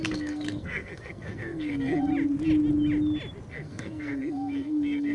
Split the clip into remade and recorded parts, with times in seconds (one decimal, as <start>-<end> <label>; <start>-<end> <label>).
0.0-2.1 remade; 2.1-3.5 recorded; 3.5-5.1 remade